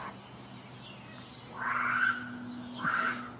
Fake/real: real